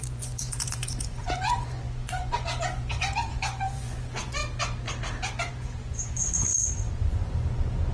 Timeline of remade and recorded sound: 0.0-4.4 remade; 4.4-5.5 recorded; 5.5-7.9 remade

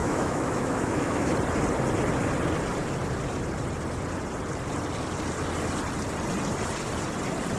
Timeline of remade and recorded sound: 0.0-1.3 remade; 1.3-7.6 recorded

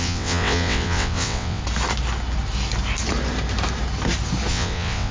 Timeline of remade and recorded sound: 0.0-1.6 remade; 1.6-4.5 recorded; 4.5-5.1 remade

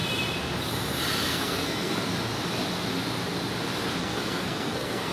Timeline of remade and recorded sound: 0.0-1.3 recorded; 1.3-2.1 remade; 2.1-4.0 recorded; 4.0-5.1 remade

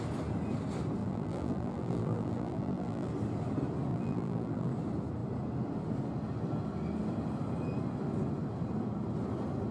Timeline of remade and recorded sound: 0.0-1.0 recorded; 1.0-3.1 remade; 3.1-3.9 recorded; 3.9-4.7 remade; 4.7-9.7 recorded

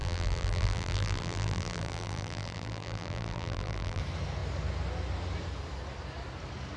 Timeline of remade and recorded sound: 0.0-4.0 remade; 4.0-6.8 recorded